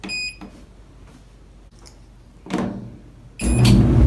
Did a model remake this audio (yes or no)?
no